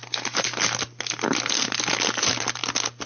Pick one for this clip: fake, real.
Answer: real